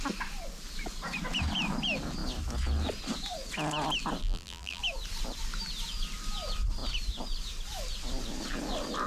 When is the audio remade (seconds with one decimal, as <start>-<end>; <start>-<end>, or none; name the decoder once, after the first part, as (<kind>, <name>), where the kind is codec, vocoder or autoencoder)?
4.2-4.8 (vocoder, BigVGAN v2)